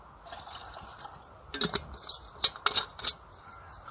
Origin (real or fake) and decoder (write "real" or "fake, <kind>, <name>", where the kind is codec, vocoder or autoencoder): real